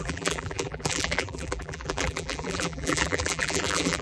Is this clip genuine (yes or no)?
no